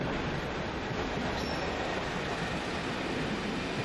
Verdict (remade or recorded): recorded